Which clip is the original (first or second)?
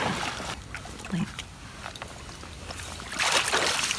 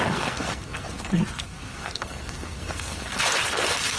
first